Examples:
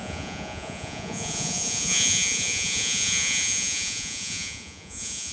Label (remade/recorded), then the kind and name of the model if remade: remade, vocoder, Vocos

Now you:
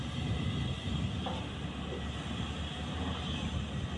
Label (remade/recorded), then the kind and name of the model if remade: recorded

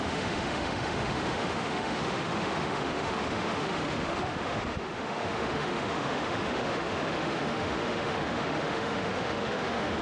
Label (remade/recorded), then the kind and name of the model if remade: remade, autoencoder, DAC-VAE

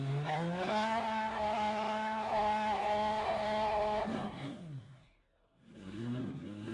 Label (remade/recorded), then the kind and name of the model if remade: remade, codec, SNAC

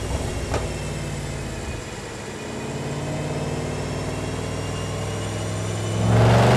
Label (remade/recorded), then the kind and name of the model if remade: recorded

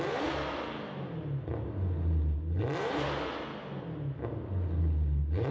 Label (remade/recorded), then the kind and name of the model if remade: recorded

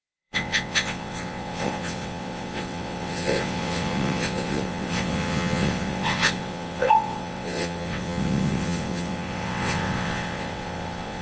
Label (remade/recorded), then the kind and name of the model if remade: remade, vocoder, WaveNeXt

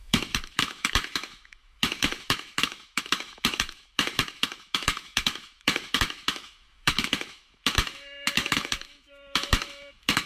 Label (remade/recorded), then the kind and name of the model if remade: remade, autoencoder, DAC-VAE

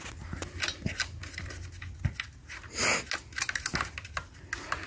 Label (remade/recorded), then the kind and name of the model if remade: recorded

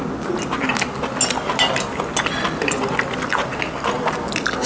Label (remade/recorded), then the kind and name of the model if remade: recorded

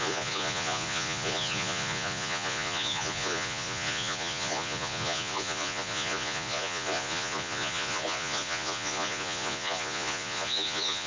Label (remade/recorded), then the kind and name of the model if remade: remade, vocoder, Vocos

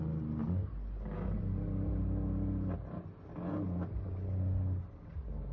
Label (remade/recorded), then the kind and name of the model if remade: recorded